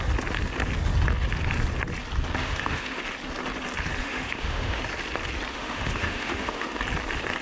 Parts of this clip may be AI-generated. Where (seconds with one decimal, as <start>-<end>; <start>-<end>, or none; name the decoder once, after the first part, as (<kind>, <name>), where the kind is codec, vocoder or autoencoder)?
2.4-3.0 (autoencoder, DAC-VAE); 4.0-4.8; 5.5-6.8